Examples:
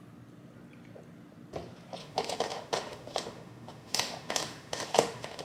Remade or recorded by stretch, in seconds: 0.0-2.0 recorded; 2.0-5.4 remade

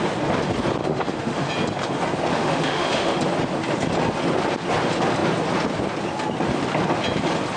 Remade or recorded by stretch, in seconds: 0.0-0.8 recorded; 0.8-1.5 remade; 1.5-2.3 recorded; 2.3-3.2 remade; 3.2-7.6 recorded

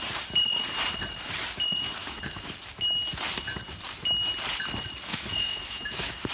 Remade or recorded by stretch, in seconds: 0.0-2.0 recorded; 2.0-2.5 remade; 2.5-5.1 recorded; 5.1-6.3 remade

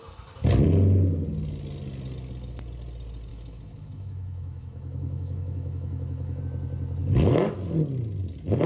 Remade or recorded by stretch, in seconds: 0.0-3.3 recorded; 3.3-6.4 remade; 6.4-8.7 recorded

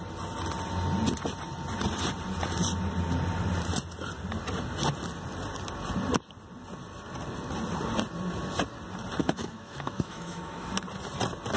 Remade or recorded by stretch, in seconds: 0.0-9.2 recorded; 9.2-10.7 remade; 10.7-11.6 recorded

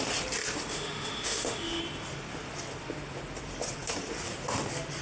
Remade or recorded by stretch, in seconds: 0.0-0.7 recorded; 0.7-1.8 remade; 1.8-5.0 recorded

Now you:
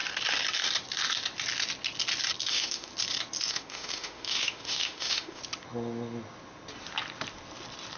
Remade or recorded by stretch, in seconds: 0.0-2.5 recorded; 2.5-2.9 remade; 2.9-3.5 recorded; 3.5-5.4 remade; 5.4-8.0 recorded